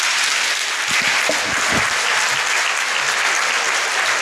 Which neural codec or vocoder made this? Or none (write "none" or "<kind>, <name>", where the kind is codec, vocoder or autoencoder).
none